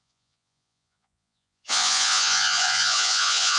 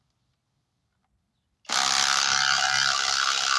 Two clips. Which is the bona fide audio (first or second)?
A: second